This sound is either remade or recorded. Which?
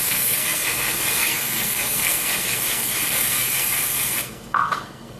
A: remade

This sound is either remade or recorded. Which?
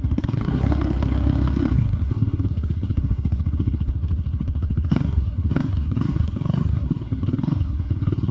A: remade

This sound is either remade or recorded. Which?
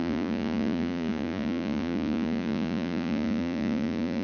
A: remade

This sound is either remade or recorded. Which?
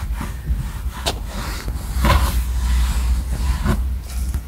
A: recorded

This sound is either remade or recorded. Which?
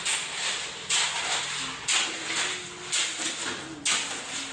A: recorded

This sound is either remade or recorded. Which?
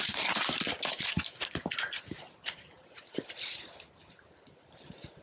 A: remade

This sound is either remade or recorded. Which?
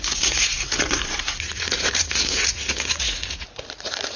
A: remade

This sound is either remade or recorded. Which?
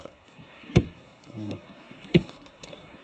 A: remade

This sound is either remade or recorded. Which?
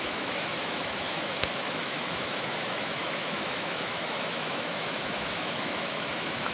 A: remade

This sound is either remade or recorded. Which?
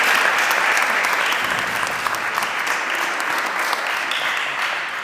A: recorded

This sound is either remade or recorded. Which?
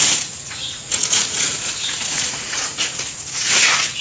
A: remade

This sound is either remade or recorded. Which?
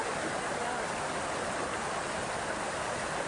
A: recorded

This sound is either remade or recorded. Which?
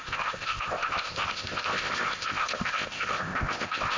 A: remade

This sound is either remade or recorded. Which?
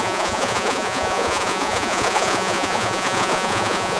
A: remade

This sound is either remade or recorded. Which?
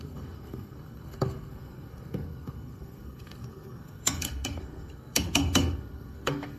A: remade